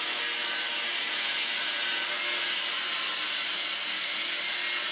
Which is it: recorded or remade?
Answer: recorded